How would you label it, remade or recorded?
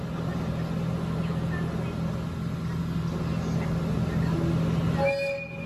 recorded